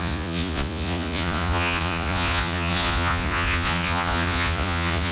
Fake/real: fake